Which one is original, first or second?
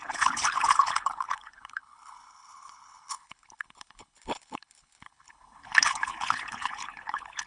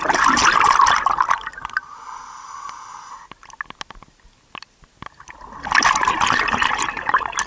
second